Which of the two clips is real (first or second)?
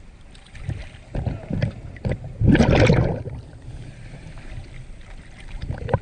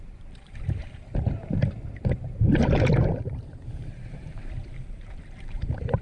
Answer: first